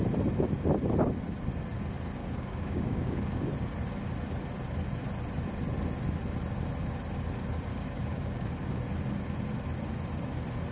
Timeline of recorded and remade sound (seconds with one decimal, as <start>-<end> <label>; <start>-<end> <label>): 0.0-2.2 recorded; 2.2-3.5 remade; 3.5-7.7 recorded; 7.7-8.5 remade; 8.5-10.7 recorded